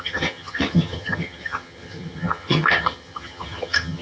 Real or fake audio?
fake